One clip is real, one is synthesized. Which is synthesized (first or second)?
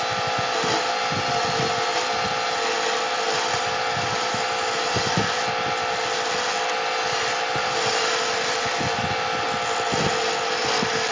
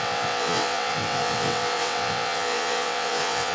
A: second